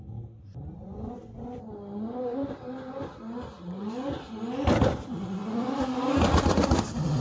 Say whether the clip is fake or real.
real